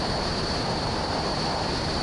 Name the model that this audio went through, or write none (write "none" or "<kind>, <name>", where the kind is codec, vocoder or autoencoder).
none